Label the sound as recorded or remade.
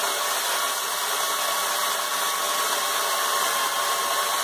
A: remade